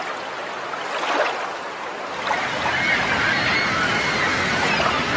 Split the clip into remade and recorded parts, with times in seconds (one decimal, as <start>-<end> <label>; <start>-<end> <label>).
0.0-5.2 recorded